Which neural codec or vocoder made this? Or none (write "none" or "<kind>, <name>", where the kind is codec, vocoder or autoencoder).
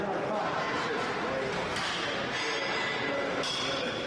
none